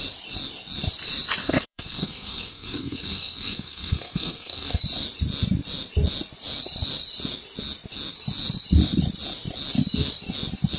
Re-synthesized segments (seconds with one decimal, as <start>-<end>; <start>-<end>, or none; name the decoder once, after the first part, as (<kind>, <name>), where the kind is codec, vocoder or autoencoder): 1.4-4.8 (codec, SNAC)